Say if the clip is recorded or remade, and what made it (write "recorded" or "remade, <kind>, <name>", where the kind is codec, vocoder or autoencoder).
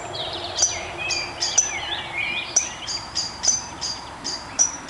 remade, vocoder, BigVGAN v2